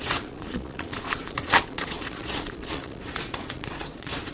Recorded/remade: remade